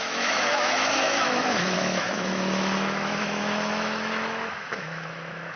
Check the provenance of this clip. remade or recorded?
remade